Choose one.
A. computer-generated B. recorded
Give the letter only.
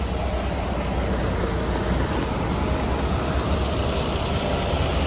B